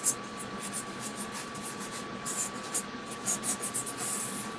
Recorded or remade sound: recorded